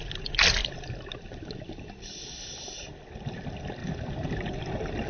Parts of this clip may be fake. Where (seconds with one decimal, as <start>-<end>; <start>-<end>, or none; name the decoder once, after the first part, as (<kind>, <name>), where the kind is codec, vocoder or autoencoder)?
none